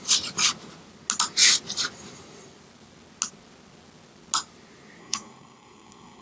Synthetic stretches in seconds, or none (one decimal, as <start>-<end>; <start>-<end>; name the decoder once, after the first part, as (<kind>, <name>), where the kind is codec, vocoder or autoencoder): 5.0-6.2 (codec, SNAC)